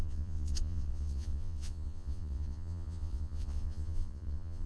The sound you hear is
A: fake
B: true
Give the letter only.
A